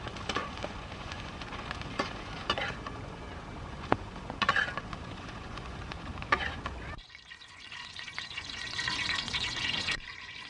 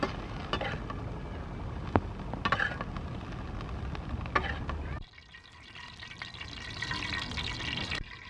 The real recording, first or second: second